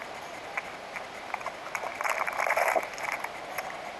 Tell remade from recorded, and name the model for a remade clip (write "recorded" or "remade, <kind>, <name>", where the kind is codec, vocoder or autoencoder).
recorded